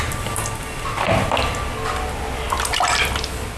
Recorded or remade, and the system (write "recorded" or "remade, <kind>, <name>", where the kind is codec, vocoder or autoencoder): recorded